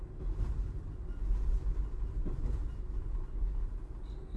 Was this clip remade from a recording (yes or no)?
no